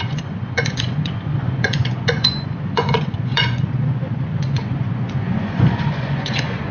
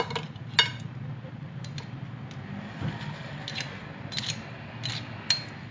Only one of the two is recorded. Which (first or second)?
second